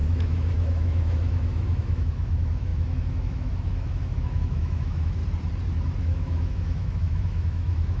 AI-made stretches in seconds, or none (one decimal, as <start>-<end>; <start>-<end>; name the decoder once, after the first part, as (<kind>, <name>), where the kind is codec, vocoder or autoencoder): 0.0-5.2 (autoencoder, DAC-VAE); 6.0-8.0